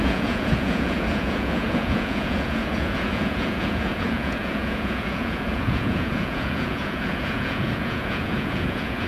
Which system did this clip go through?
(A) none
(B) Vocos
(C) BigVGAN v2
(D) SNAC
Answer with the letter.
B